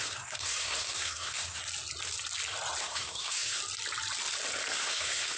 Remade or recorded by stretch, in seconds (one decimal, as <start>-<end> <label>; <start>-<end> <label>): 0.0-1.6 remade; 1.6-2.8 recorded; 2.8-3.6 remade; 3.6-4.7 recorded; 4.7-5.4 remade